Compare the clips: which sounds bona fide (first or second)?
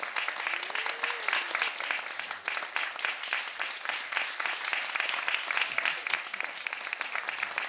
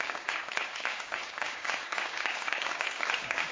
first